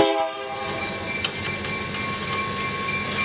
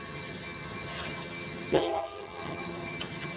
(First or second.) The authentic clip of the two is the first